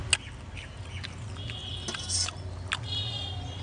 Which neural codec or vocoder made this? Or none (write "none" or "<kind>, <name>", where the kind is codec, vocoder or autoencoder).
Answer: none